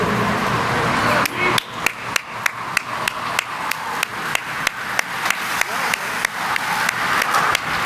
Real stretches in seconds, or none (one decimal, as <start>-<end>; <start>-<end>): 1.0-7.9